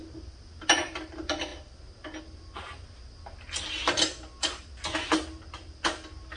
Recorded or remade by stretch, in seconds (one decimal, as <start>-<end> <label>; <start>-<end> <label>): 0.0-6.4 recorded